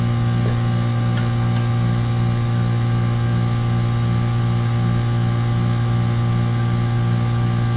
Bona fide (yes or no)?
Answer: yes